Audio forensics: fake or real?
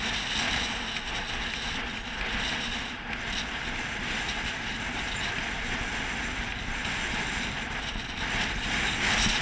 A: real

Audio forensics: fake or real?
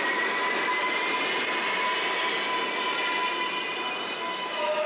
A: real